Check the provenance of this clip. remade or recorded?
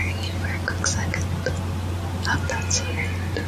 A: recorded